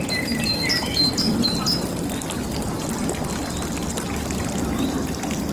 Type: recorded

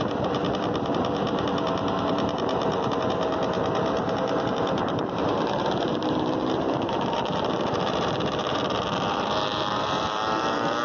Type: remade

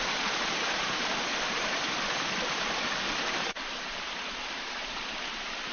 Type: remade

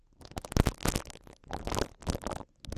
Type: recorded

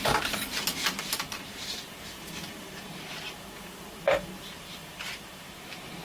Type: remade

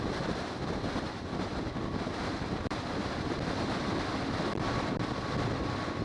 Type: remade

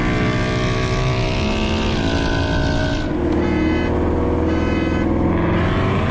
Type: recorded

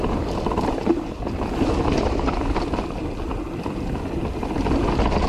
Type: recorded